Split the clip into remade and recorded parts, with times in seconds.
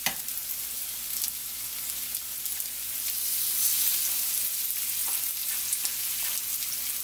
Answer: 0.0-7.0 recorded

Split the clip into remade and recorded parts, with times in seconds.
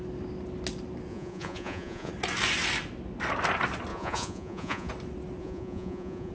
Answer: 0.0-1.1 recorded; 1.1-2.1 remade; 2.1-3.9 recorded; 3.9-4.9 remade; 4.9-5.4 recorded; 5.4-6.3 remade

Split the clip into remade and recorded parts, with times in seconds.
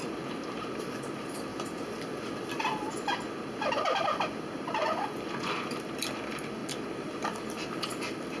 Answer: 0.0-4.8 recorded; 4.8-5.7 remade; 5.7-8.4 recorded